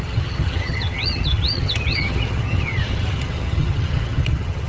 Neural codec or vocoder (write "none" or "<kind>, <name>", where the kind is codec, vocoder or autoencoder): vocoder, HiFi-GAN